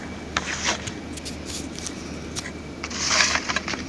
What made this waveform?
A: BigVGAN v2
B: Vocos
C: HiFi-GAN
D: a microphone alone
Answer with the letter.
D